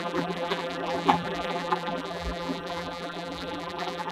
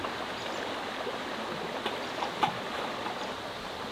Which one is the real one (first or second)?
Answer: second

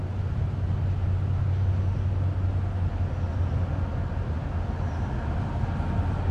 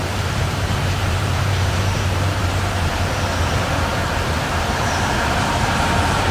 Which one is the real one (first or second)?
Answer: first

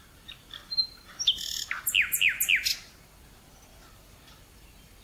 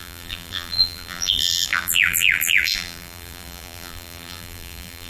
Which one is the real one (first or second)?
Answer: first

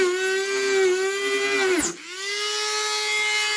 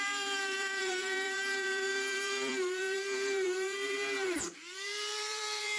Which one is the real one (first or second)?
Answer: first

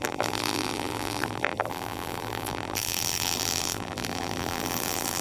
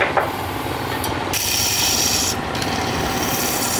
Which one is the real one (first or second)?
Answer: second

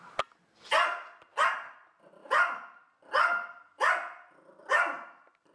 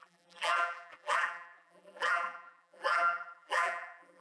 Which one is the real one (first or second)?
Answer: first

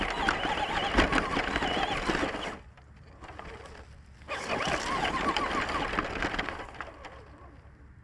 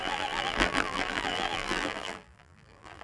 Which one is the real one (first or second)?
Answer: first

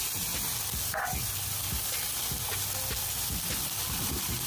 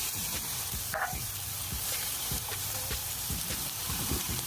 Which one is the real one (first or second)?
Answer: first